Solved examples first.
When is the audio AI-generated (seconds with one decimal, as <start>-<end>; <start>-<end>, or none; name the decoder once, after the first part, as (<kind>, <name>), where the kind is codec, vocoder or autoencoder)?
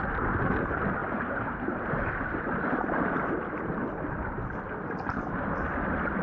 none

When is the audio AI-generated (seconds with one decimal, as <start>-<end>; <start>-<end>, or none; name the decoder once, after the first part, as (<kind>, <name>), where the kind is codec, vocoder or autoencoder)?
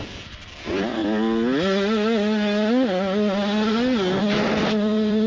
0.0-1.0 (vocoder, BigVGAN v2); 4.2-5.3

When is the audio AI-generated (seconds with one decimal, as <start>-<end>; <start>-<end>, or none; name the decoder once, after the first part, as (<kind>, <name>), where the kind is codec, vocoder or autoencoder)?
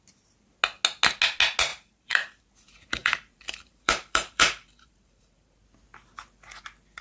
1.7-2.4 (vocoder, BigVGAN v2); 3.0-5.6